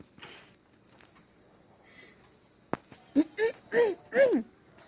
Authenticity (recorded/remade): recorded